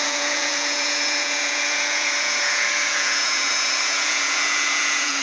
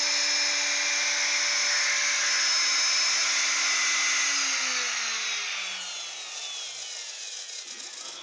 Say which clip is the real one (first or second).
second